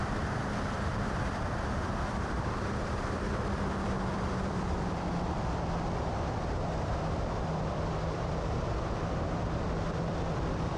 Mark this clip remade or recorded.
remade